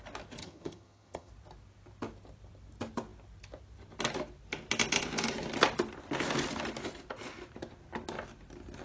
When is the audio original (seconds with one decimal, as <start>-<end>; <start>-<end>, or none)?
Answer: 0.0-0.4; 1.3-8.8